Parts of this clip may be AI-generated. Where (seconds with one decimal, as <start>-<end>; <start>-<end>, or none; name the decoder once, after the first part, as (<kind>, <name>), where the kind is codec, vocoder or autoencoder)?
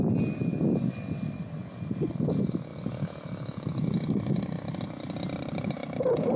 none